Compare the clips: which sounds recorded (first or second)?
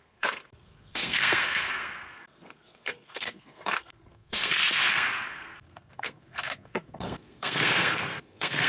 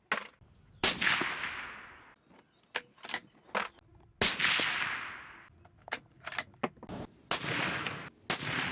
second